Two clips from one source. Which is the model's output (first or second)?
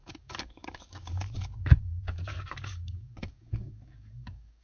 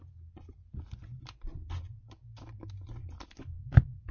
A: first